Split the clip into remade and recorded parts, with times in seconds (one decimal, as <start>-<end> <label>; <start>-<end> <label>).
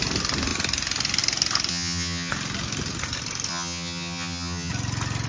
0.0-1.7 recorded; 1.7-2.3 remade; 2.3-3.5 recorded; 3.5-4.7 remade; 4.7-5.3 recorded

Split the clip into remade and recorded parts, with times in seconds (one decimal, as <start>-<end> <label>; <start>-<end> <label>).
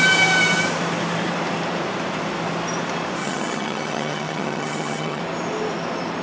0.0-3.2 recorded; 3.2-5.2 remade; 5.2-6.2 recorded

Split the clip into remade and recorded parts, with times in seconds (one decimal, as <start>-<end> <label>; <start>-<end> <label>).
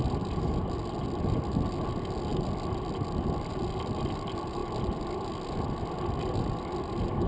0.0-7.3 recorded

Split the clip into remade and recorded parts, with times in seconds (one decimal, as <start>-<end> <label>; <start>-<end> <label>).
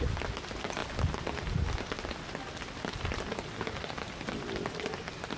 0.0-5.4 recorded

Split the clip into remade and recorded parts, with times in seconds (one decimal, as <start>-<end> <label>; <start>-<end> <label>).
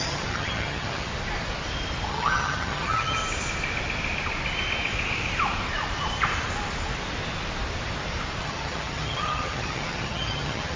0.0-1.1 remade; 1.1-2.1 recorded; 2.1-3.2 remade; 3.2-8.4 recorded; 8.4-10.8 remade